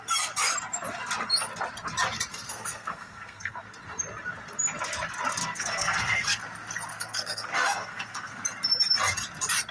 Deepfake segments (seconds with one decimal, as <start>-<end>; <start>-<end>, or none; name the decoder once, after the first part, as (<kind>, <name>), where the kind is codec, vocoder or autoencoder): 2.3-3.5 (codec, SNAC); 5.4-6.4; 6.9-8.4